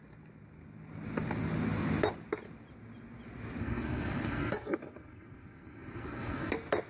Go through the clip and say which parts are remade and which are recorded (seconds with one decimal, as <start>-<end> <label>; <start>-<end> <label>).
0.0-3.6 recorded; 3.6-6.5 remade; 6.5-6.9 recorded